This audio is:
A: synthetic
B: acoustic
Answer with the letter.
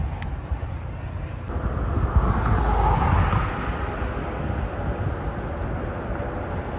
B